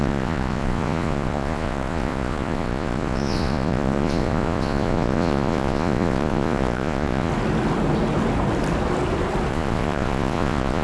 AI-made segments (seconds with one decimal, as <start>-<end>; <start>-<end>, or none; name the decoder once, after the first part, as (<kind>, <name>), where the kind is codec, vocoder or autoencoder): 0.0-7.3 (vocoder, Vocos); 9.5-10.8